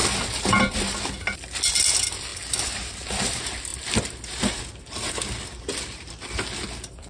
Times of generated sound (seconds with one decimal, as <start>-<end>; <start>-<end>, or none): none